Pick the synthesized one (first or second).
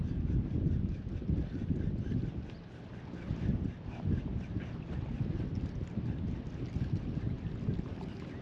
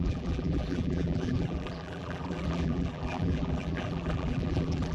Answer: second